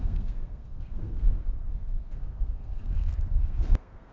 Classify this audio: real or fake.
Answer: fake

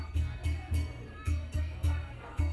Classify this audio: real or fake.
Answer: fake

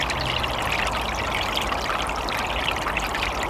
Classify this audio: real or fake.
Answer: real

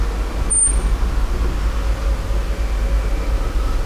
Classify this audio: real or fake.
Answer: real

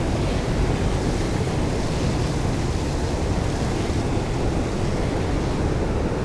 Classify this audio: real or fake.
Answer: real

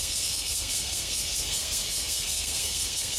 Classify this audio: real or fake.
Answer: fake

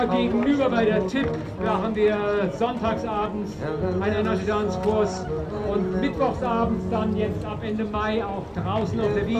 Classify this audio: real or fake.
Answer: real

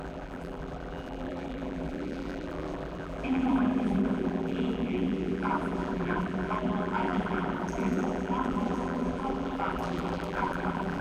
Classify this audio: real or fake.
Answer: fake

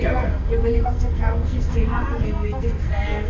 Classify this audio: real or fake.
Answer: fake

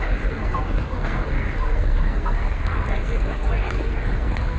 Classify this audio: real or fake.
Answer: fake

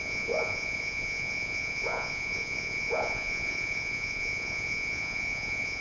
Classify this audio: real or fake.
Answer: fake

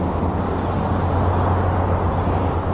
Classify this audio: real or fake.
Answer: real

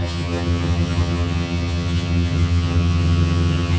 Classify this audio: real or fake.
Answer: fake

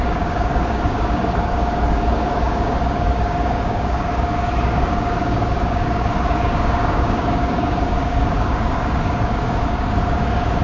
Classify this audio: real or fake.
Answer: fake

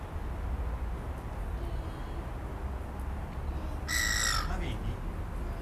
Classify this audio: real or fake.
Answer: real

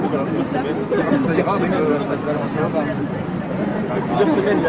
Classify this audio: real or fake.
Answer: real